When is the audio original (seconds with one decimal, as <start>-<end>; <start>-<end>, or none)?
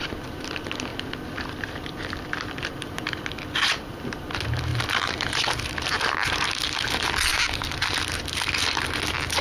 0.0-0.9; 3.0-4.7; 6.0-7.3; 7.9-9.4